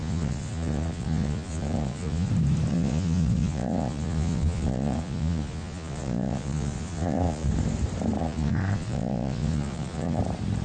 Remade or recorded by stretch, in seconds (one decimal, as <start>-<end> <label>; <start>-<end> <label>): 0.0-2.3 remade; 2.3-2.7 recorded; 2.7-7.5 remade; 7.5-8.2 recorded; 8.2-10.2 remade; 10.2-10.6 recorded